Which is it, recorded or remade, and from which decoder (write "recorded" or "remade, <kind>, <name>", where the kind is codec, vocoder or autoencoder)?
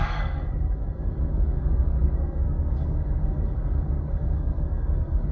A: remade, codec, SNAC